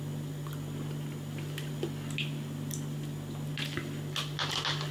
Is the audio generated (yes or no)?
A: no